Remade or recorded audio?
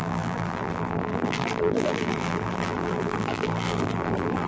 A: remade